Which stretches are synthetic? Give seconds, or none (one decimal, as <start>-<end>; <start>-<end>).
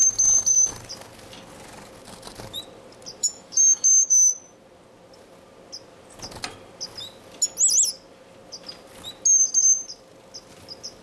3.2-4.4